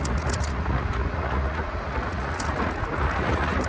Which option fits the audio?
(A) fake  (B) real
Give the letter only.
A